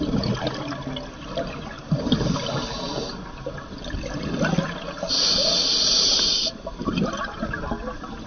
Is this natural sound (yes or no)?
yes